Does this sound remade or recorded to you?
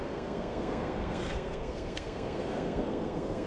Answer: remade